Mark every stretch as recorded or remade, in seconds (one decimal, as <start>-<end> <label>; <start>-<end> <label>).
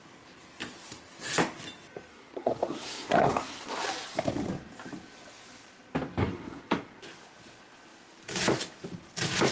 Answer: 0.0-2.1 recorded; 2.1-3.8 remade; 3.8-6.2 recorded; 6.2-7.0 remade; 7.0-9.5 recorded